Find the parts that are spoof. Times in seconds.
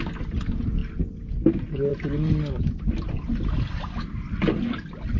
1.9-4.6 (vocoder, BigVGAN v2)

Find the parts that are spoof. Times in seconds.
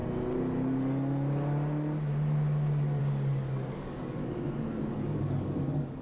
3.0-4.2 (codec, DAC); 4.9-6.0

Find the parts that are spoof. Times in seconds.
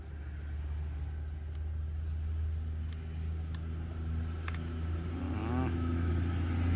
5.4-6.1 (autoencoder, DAC-VAE)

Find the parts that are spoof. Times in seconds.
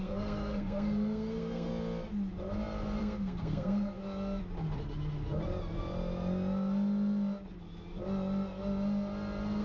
0.0-1.7 (codec, SNAC); 3.0-4.0